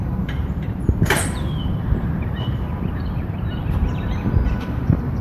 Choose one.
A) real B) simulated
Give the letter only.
B